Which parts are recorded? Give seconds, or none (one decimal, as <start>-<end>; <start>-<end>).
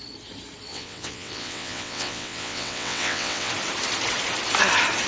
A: 0.0-0.7; 3.5-5.1